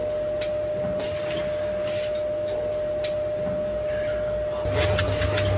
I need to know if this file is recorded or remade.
recorded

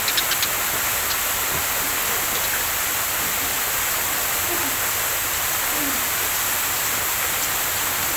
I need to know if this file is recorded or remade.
recorded